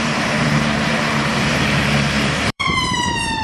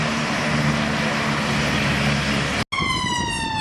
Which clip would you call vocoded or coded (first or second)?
first